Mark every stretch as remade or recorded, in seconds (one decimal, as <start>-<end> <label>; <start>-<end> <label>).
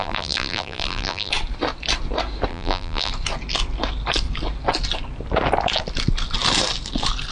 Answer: 0.0-1.3 remade; 1.3-2.5 recorded; 2.5-3.1 remade; 3.1-7.3 recorded